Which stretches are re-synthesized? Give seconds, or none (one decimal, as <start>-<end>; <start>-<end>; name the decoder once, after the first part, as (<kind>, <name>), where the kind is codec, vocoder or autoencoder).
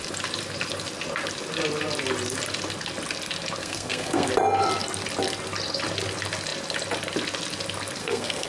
3.6-4.3 (codec, SNAC); 8.0-8.5